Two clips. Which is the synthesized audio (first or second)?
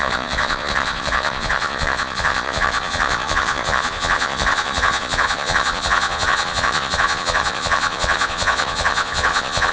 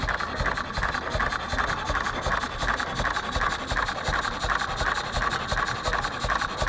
first